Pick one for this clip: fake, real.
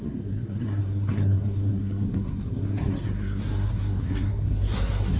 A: fake